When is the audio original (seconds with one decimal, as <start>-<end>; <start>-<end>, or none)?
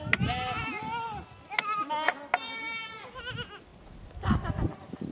0.0-5.1